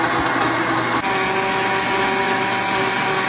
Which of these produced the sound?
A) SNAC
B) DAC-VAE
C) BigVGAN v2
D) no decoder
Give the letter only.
D